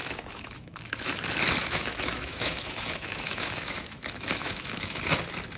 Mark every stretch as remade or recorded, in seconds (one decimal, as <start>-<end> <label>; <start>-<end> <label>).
0.0-1.1 remade; 1.1-1.6 recorded; 1.6-5.0 remade; 5.0-5.6 recorded